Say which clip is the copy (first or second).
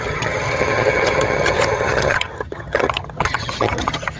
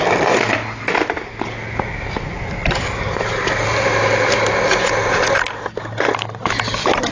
first